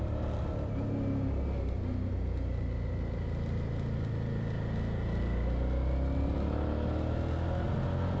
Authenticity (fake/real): real